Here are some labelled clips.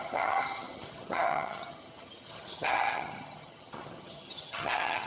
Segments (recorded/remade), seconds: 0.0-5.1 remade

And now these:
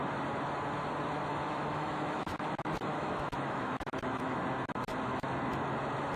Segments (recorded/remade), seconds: 0.0-1.3 recorded; 1.3-4.4 remade; 4.4-6.2 recorded

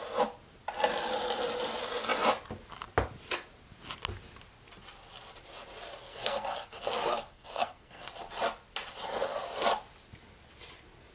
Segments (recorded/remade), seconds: 0.0-6.0 recorded; 6.0-8.1 remade; 8.1-11.1 recorded

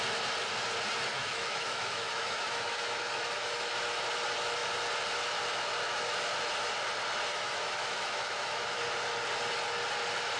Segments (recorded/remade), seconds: 0.0-1.1 recorded; 1.1-3.7 remade; 3.7-7.3 recorded; 7.3-8.8 remade; 8.8-10.4 recorded